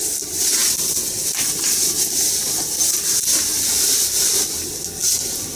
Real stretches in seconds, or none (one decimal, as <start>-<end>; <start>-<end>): 0.0-5.6